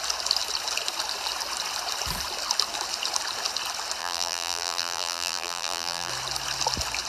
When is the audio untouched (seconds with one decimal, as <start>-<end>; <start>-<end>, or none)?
0.0-4.0; 6.1-7.1